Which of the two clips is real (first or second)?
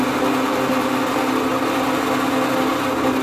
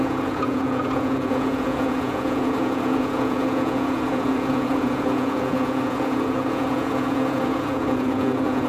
first